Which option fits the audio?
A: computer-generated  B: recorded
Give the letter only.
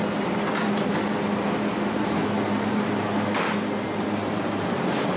B